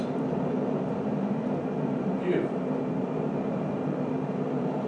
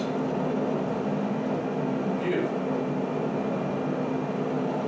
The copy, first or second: first